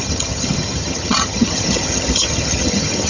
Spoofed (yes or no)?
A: yes